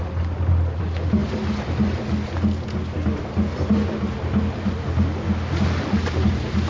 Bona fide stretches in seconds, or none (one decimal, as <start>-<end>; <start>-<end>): 0.0-6.7